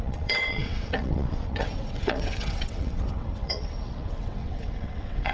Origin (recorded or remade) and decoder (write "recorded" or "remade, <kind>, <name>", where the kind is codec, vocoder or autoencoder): remade, vocoder, WaveNeXt